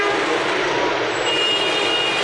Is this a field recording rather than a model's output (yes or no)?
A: yes